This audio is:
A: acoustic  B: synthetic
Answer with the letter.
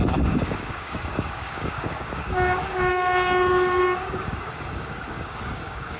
B